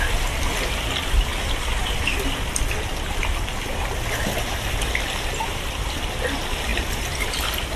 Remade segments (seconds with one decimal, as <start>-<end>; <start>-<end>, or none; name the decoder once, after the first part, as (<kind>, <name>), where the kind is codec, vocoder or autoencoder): none